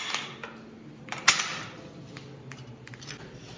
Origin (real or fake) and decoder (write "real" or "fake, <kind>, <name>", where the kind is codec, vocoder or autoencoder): real